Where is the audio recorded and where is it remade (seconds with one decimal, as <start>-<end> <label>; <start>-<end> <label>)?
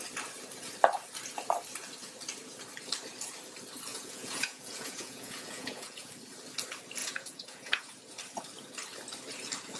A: 0.0-3.9 recorded; 3.9-6.1 remade; 6.1-7.0 recorded; 7.0-7.9 remade; 7.9-9.8 recorded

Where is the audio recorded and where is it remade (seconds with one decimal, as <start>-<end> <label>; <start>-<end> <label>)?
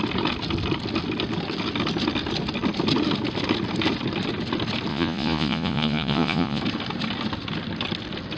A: 0.0-4.9 recorded; 4.9-6.6 remade; 6.6-8.4 recorded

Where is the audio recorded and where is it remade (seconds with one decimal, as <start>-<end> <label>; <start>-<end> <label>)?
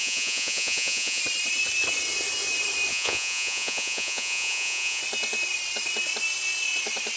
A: 0.0-1.2 remade; 1.2-2.9 recorded; 2.9-5.0 remade; 5.0-7.2 recorded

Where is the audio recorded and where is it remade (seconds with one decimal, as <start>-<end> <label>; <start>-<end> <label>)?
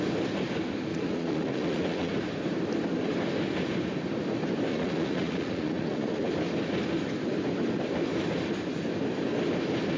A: 0.0-0.9 recorded; 0.9-2.1 remade; 2.1-4.7 recorded; 4.7-6.3 remade; 6.3-10.0 recorded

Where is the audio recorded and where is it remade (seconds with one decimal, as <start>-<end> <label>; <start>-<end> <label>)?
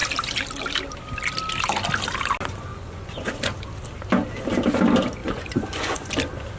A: 0.0-2.7 recorded; 2.7-3.3 remade; 3.3-5.2 recorded; 5.2-6.1 remade; 6.1-6.6 recorded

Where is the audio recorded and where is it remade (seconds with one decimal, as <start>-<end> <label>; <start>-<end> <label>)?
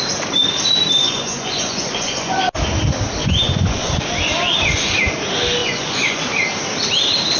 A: 0.0-1.0 recorded; 1.0-2.4 remade; 2.4-3.2 recorded; 3.2-3.9 remade; 3.9-5.6 recorded; 5.6-6.2 remade; 6.2-7.4 recorded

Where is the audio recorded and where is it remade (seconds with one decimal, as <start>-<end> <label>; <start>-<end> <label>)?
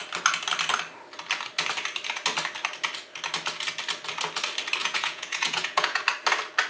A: 0.0-4.8 recorded; 4.8-6.0 remade; 6.0-6.7 recorded